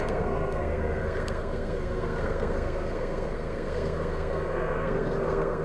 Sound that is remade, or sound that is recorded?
remade